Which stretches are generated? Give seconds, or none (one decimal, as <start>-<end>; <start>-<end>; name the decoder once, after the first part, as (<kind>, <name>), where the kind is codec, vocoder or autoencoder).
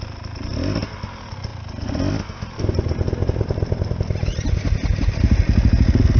none